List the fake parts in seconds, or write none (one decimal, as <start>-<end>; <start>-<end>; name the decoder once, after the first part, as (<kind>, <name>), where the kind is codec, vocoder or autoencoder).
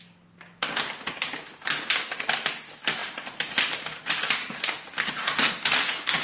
3.0-4.6 (vocoder, BigVGAN v2)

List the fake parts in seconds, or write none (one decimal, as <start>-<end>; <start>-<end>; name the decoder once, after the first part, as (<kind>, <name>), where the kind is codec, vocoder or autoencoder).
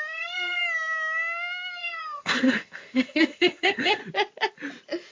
0.0-0.6 (codec, SNAC); 1.8-4.0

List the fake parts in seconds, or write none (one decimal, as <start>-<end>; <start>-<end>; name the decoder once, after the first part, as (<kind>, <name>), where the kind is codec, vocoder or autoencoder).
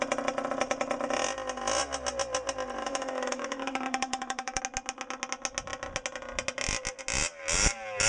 2.8-4.6 (autoencoder, DAC-VAE)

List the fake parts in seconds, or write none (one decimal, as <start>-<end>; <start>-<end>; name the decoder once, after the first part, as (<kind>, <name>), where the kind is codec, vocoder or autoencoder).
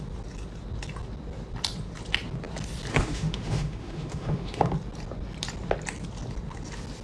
2.9-4.7 (autoencoder, DAC-VAE)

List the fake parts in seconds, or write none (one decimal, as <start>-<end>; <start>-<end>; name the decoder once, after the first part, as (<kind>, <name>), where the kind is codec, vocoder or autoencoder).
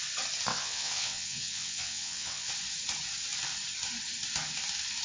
0.5-2.5 (vocoder, WaveNeXt)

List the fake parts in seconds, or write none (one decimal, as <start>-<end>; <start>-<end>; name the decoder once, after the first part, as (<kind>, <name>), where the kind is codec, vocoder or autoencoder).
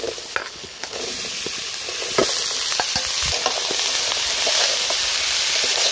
0.4-1.0 (codec, HILCodec)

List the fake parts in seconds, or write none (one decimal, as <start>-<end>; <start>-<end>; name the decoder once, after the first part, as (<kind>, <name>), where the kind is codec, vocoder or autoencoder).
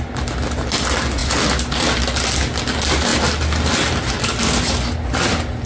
none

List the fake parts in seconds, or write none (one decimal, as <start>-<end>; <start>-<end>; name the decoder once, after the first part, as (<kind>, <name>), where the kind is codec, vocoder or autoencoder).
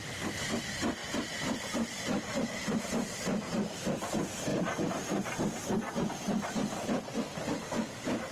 1.0-2.9 (vocoder, BigVGAN v2); 4.5-5.7